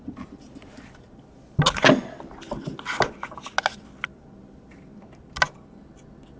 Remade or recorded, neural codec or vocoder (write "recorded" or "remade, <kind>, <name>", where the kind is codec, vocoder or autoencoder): recorded